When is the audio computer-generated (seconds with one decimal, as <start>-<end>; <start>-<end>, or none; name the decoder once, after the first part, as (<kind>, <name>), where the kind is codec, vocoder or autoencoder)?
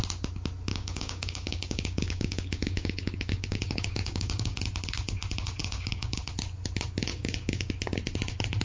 0.7-4.6 (codec, DAC); 5.6-6.2; 7.1-7.7